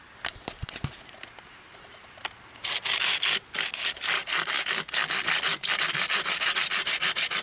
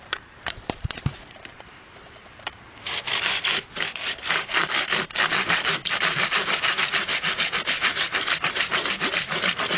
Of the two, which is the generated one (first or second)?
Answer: second